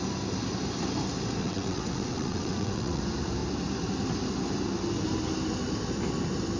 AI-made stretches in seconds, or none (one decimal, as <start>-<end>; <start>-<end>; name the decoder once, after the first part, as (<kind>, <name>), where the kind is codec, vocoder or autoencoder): 1.4-3.0 (vocoder, WaveNeXt)